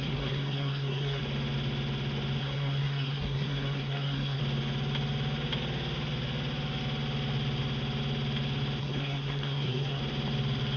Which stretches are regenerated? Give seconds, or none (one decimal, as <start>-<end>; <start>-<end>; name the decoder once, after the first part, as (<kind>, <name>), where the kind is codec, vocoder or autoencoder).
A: 0.0-1.2 (codec, SNAC); 2.4-4.4; 8.8-10.0